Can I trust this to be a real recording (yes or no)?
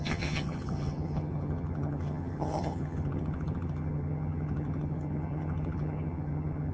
no